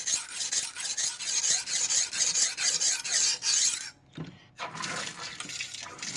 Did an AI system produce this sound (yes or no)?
no